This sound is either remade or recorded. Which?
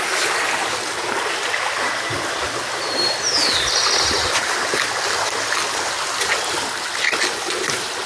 recorded